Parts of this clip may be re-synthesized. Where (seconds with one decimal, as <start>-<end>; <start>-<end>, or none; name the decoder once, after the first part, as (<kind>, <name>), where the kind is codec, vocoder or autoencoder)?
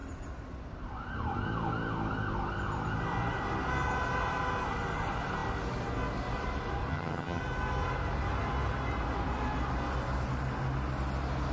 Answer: 6.9-7.4 (vocoder, HiFi-GAN)